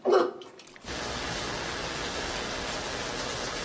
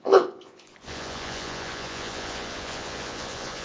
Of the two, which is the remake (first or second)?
second